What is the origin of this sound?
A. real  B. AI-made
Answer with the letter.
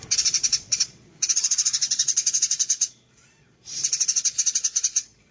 B